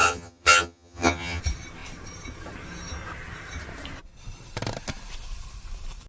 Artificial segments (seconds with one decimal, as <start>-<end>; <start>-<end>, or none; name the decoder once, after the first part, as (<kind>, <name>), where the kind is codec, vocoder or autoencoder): 0.0-1.4 (vocoder, HiFi-GAN)